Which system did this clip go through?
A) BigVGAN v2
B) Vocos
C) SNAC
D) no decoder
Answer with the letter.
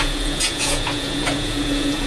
B